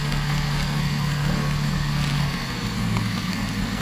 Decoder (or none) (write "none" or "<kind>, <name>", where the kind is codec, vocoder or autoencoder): codec, SNAC